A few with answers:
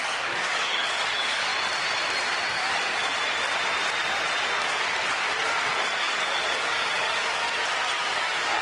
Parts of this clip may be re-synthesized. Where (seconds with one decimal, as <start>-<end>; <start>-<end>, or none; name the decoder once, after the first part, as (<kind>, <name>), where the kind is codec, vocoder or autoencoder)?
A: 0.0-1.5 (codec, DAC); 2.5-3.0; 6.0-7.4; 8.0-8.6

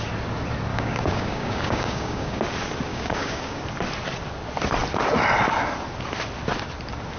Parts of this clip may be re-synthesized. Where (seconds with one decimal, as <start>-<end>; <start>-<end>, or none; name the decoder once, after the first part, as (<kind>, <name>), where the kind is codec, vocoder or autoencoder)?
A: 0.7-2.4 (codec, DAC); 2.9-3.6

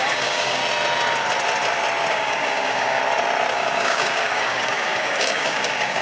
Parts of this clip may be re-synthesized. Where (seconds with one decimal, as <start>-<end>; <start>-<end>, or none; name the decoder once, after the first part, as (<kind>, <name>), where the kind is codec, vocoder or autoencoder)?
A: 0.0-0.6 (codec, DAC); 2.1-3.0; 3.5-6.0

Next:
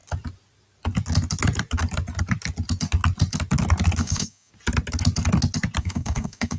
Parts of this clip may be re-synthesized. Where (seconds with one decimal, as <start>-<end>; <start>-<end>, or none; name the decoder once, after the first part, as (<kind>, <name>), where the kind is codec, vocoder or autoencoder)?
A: 4.0-4.5 (codec, DAC); 5.8-6.6